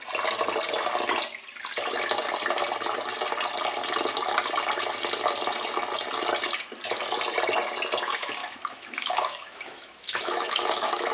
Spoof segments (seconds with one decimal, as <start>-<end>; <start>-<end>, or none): 8.4-11.1